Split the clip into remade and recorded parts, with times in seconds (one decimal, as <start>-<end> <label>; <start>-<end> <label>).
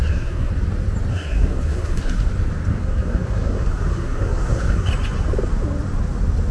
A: 0.0-0.5 remade; 0.5-1.1 recorded; 1.1-2.3 remade; 2.3-2.7 recorded; 2.7-4.9 remade; 4.9-6.5 recorded